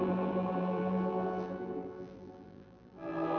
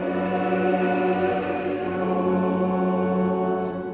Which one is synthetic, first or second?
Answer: first